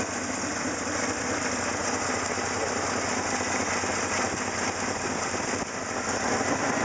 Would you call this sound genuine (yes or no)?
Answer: yes